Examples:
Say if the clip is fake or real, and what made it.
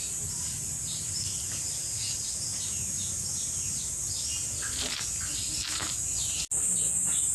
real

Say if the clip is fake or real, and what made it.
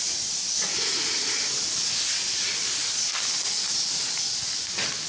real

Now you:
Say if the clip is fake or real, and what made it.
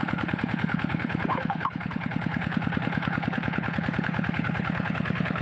fake, codec, HILCodec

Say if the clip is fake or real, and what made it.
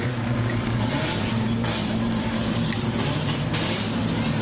fake, vocoder, BigVGAN v2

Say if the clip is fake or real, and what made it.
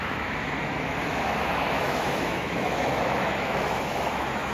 fake, autoencoder, DAC-VAE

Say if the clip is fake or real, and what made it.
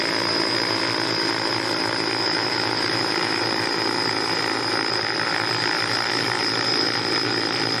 real